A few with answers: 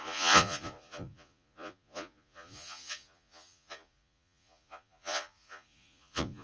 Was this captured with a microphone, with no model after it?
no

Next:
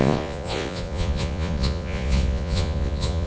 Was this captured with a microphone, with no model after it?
no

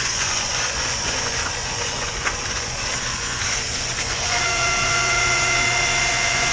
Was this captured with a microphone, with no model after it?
no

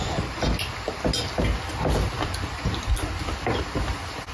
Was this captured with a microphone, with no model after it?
yes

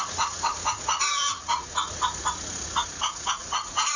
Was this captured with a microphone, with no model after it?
no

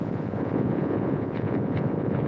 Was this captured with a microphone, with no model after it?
no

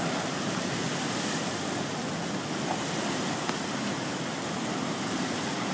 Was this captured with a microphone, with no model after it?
yes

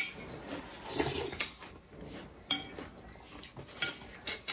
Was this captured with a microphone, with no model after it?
yes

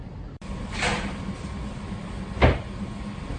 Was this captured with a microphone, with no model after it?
yes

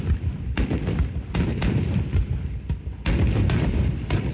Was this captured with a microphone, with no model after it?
yes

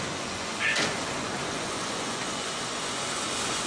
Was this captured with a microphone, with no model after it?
no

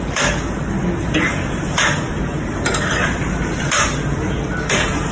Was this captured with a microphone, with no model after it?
yes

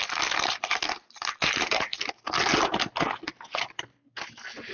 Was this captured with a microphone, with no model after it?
yes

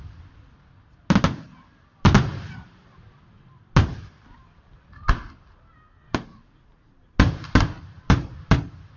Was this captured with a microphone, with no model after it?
yes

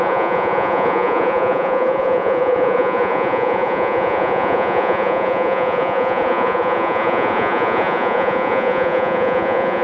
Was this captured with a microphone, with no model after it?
no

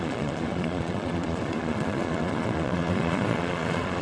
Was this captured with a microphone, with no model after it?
no